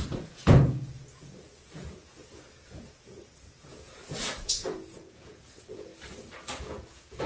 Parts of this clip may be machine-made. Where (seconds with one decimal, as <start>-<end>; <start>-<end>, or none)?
0.0-5.9; 6.6-7.3